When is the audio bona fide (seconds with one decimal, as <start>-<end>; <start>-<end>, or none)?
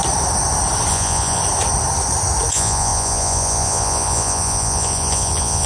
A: 0.0-0.9; 1.4-2.5